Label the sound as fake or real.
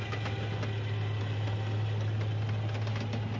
real